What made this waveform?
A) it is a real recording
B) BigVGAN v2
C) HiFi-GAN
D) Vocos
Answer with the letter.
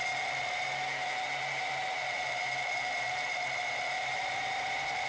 B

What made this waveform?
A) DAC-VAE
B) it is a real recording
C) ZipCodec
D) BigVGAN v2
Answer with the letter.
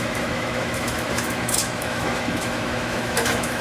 A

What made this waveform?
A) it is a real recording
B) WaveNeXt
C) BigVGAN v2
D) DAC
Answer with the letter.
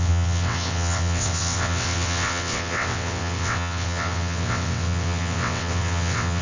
B